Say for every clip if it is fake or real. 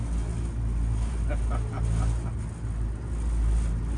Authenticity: real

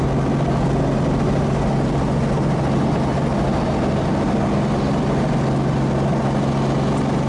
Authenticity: real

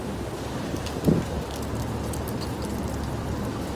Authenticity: real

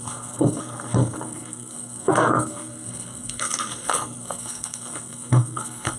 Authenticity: fake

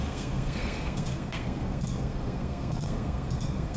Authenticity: fake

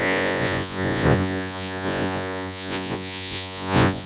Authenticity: fake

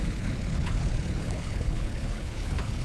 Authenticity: fake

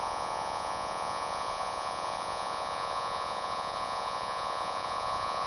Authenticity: fake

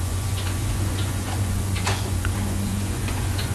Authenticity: fake